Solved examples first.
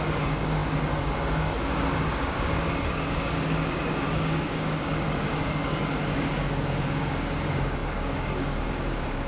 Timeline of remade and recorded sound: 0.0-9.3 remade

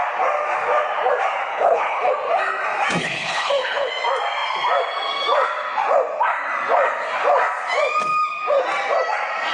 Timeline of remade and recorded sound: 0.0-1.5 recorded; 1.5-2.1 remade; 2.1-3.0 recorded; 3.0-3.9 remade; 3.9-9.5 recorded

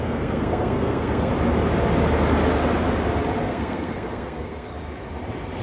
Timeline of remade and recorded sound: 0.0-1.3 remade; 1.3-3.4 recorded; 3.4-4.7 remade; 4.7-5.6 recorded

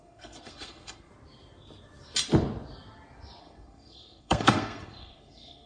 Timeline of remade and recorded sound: 0.0-1.1 remade; 1.1-3.4 recorded; 3.4-5.7 remade

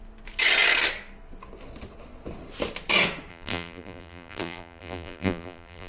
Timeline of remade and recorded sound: 0.0-3.3 recorded; 3.3-5.9 remade

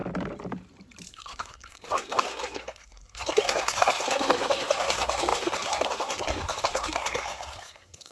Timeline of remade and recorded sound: 0.0-1.1 recorded; 1.1-8.1 remade